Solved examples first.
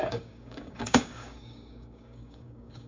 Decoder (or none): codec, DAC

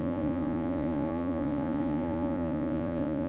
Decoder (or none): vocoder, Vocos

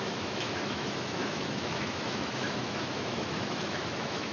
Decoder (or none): autoencoder, DAC-VAE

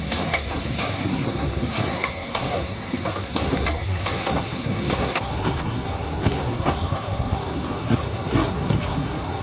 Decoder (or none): codec, SNAC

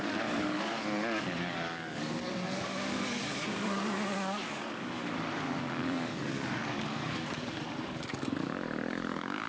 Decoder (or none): codec, DAC